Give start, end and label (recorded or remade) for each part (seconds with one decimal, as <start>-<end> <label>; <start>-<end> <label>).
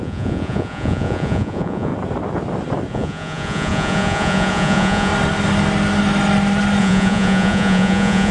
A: 0.0-1.9 remade; 1.9-2.9 recorded; 2.9-5.1 remade; 5.1-6.8 recorded; 6.8-8.3 remade